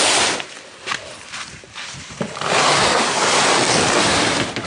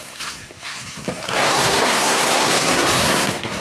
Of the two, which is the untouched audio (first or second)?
first